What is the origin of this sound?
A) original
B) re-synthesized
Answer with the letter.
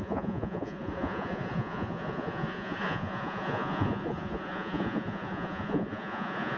B